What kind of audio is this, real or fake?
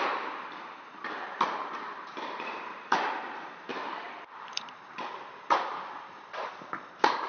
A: fake